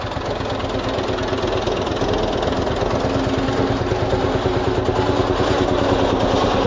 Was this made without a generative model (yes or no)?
yes